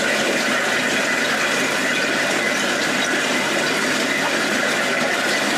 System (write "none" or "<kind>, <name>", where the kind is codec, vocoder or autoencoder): none